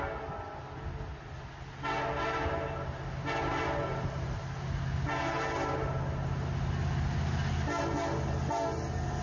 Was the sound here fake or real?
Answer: real